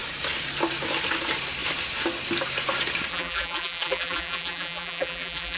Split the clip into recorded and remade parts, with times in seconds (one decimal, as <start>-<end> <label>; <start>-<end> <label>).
0.0-3.1 recorded; 3.1-5.6 remade

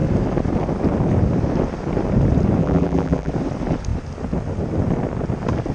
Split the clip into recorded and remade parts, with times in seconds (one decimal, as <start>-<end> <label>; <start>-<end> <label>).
0.0-2.6 recorded; 2.6-3.3 remade; 3.3-5.7 recorded

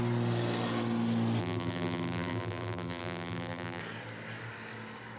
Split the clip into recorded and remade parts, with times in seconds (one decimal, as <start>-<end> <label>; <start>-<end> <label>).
0.0-1.4 recorded; 1.4-3.8 remade; 3.8-5.2 recorded

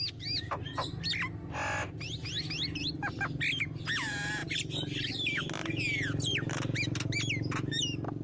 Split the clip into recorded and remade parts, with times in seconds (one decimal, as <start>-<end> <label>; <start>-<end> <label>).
0.0-6.3 recorded; 6.3-7.7 remade; 7.7-8.2 recorded

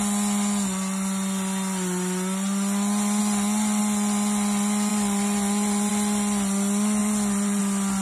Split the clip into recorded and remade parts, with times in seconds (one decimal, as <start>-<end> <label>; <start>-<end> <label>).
0.0-4.9 recorded; 4.9-5.9 remade; 5.9-7.0 recorded; 7.0-7.6 remade; 7.6-8.0 recorded